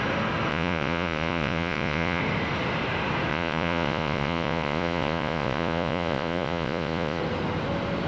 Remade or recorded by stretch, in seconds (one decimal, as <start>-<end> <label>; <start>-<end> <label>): 0.0-0.5 recorded; 0.5-2.2 remade; 2.2-3.3 recorded; 3.3-7.2 remade; 7.2-8.1 recorded